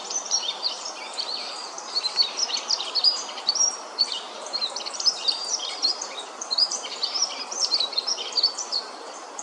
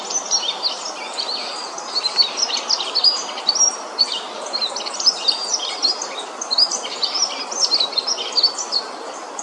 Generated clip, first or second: first